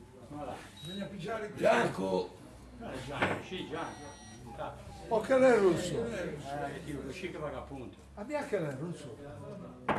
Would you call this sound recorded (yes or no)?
yes